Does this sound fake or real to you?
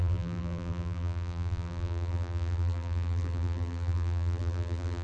fake